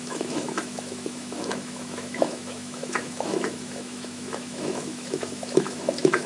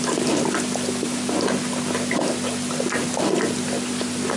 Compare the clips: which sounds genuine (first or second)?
second